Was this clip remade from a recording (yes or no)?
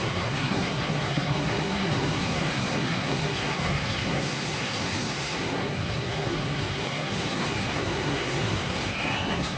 yes